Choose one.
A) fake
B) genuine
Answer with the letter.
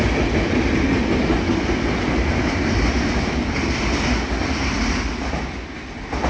B